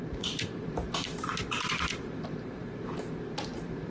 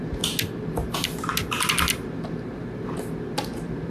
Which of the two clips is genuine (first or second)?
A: second